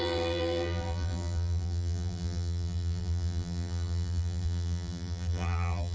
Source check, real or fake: fake